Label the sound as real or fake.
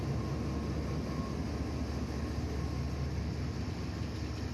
real